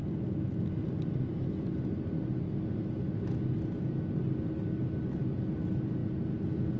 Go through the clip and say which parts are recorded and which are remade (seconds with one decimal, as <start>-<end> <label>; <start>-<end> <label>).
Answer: 0.0-6.8 recorded